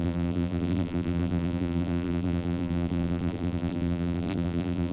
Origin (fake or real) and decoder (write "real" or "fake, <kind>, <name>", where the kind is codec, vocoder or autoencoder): fake, vocoder, BigVGAN v2